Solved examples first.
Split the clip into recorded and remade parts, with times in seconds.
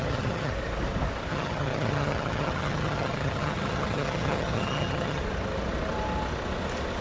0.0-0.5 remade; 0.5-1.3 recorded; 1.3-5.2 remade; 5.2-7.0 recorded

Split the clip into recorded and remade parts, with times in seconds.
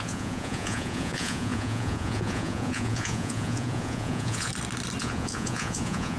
0.0-4.5 remade; 4.5-5.0 recorded; 5.0-6.2 remade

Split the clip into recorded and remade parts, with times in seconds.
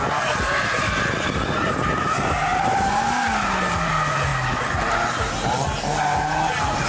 0.0-6.9 recorded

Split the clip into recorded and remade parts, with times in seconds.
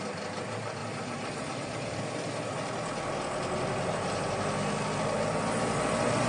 0.0-0.8 recorded; 0.8-4.6 remade; 4.6-6.3 recorded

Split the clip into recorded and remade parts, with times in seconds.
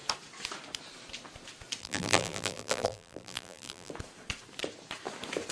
0.0-1.8 recorded; 1.8-3.9 remade; 3.9-5.5 recorded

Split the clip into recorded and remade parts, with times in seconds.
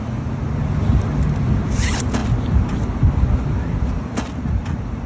0.0-5.1 recorded